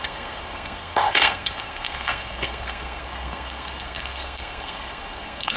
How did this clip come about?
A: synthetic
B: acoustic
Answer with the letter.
A